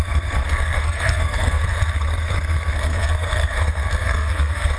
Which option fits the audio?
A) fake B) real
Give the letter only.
A